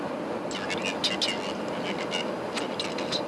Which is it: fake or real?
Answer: real